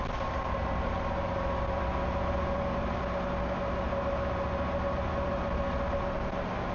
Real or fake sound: real